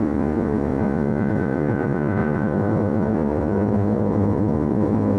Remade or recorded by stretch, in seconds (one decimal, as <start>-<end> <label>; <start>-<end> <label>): 0.0-5.2 remade